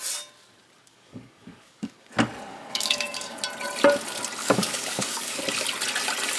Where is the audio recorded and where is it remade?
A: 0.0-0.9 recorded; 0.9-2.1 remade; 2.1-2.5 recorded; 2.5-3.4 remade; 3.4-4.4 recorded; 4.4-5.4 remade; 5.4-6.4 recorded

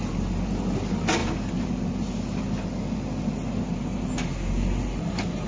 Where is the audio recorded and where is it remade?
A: 0.0-5.5 recorded